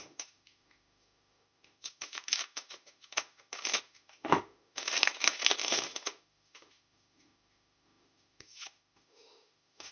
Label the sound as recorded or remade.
remade